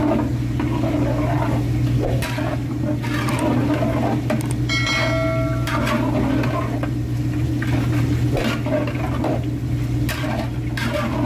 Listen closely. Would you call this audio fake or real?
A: real